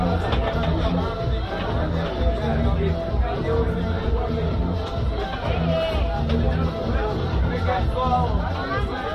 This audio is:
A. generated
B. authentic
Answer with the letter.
B